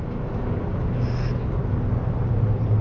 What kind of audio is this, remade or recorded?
recorded